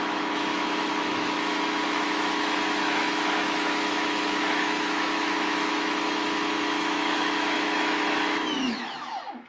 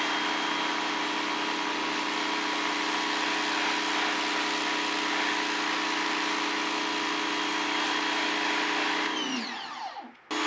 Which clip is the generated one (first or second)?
first